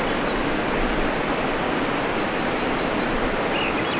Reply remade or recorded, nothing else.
recorded